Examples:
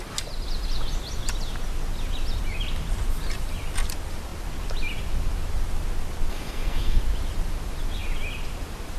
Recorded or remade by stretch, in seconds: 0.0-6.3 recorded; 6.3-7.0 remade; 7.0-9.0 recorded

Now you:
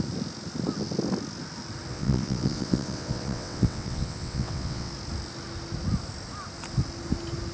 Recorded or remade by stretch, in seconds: 0.0-1.9 recorded; 1.9-4.9 remade; 4.9-7.5 recorded

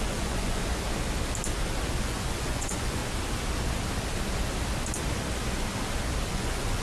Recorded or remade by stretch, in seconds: 0.0-0.6 remade; 0.6-2.0 recorded; 2.0-3.0 remade; 3.0-6.3 recorded; 6.3-6.8 remade

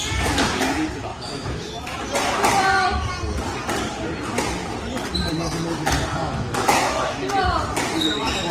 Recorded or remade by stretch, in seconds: 0.0-1.1 recorded; 1.1-2.0 remade; 2.0-6.2 recorded; 6.2-7.3 remade; 7.3-8.5 recorded